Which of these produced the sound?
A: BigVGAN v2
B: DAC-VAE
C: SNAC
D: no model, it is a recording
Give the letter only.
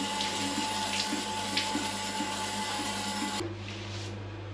D